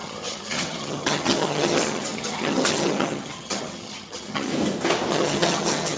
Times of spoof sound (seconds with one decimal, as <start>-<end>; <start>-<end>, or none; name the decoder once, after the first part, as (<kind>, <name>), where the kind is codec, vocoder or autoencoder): 0.0-4.5 (vocoder, HiFi-GAN); 5.1-6.0